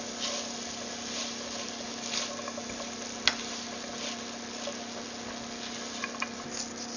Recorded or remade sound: recorded